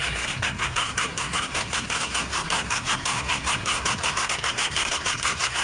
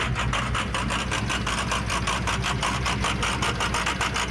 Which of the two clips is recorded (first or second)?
second